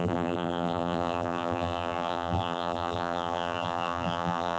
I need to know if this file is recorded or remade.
remade